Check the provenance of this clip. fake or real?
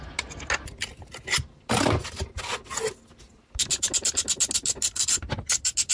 real